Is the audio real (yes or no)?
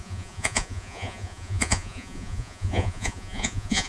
no